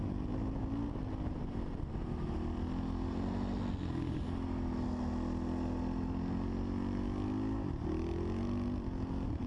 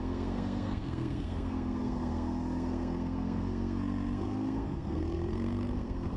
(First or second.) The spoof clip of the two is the second